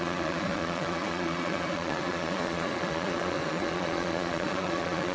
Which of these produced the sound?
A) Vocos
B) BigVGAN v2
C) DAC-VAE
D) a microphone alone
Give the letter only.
A